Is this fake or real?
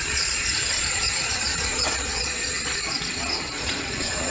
fake